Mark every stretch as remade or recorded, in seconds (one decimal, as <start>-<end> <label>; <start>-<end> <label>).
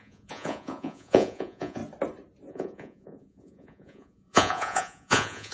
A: 0.0-1.8 remade; 1.8-2.5 recorded; 2.5-5.5 remade